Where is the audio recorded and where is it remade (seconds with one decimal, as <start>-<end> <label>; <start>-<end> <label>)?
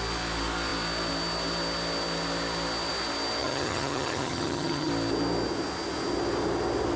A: 0.0-3.4 recorded; 3.4-4.9 remade; 4.9-7.0 recorded